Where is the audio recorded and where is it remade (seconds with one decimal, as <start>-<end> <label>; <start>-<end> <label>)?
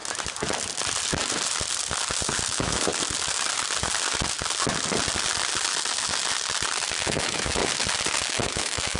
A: 0.0-2.5 recorded; 2.5-2.9 remade; 2.9-7.0 recorded; 7.0-7.6 remade; 7.6-8.3 recorded; 8.3-9.0 remade